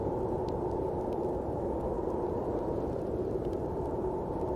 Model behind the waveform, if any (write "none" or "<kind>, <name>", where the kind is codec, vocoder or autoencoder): vocoder, BigVGAN v2